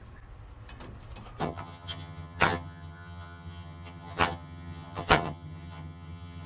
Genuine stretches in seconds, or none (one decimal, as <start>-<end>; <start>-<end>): 0.0-1.4